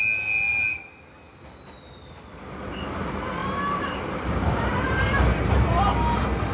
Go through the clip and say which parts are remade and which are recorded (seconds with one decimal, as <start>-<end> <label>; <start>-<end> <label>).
0.0-3.4 recorded; 3.4-5.8 remade; 5.8-6.5 recorded